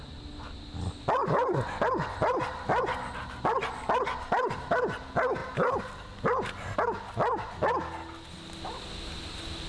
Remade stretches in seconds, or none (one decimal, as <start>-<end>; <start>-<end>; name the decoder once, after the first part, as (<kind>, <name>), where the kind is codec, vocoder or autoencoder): none